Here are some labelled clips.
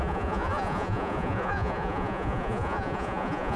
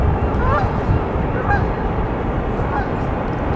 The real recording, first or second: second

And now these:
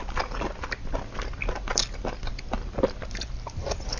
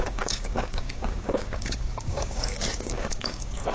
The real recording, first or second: first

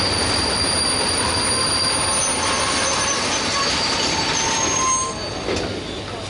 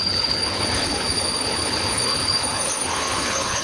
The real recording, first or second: first